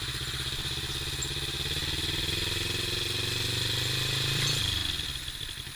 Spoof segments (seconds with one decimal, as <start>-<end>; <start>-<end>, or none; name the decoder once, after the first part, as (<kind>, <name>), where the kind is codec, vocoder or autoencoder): 0.0-1.8 (vocoder, BigVGAN v2); 2.3-5.8